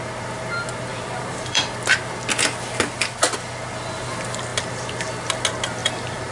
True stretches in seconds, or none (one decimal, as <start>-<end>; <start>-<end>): 0.0-0.9; 1.6-5.8